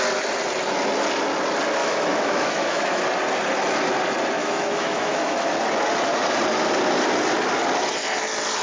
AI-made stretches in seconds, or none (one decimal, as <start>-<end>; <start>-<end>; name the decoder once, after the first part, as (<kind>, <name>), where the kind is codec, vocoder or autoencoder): 1.8-3.0 (autoencoder, DAC-VAE); 4.4-5.5